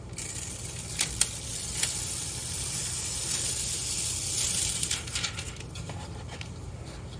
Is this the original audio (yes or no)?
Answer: yes